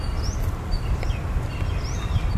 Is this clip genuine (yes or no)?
yes